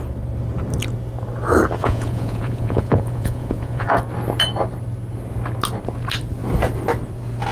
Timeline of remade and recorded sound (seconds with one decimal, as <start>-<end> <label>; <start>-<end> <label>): 0.0-1.8 recorded; 1.8-3.9 remade; 3.9-7.5 recorded